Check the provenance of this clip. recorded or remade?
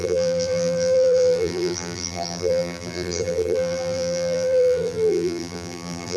remade